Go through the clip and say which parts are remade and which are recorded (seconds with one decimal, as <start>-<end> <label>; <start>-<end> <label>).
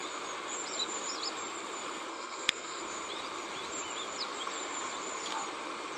0.0-2.1 recorded; 2.1-2.8 remade; 2.8-6.0 recorded